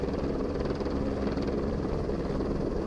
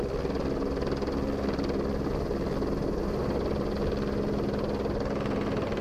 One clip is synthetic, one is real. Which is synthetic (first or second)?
first